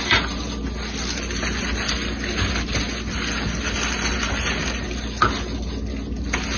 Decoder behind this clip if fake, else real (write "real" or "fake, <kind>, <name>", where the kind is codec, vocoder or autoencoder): real